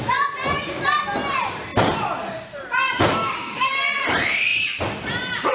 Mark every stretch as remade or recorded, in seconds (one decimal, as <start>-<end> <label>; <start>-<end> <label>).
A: 0.0-3.2 recorded; 3.2-3.8 remade; 3.8-5.5 recorded